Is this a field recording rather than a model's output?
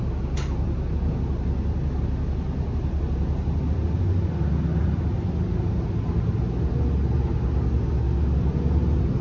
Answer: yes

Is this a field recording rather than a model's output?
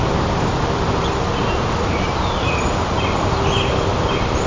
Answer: yes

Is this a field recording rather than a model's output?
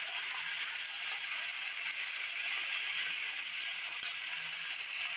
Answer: yes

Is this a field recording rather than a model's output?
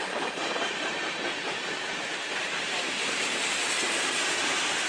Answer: no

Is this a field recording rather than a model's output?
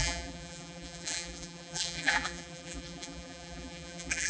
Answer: no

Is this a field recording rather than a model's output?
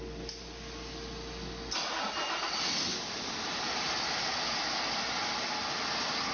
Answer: yes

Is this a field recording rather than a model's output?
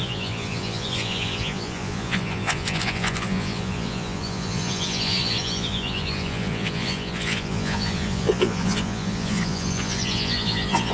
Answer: no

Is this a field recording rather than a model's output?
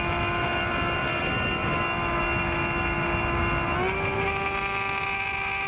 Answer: yes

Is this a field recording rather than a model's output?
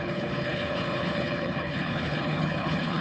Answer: no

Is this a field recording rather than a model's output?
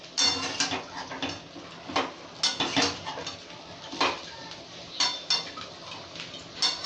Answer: yes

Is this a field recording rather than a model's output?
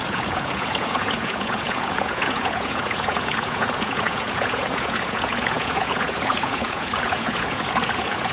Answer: no